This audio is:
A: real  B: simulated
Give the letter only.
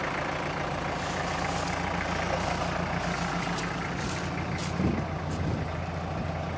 A